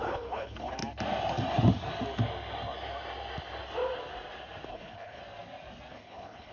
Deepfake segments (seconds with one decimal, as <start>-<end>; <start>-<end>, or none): 0.0-0.8; 4.7-5.2; 5.9-6.5